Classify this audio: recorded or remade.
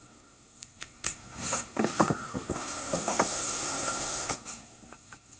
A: remade